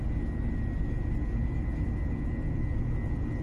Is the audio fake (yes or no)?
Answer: no